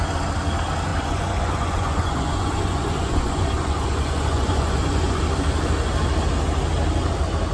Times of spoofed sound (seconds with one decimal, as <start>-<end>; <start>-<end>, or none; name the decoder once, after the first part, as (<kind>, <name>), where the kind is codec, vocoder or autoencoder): 0.9-5.2 (vocoder, Vocos)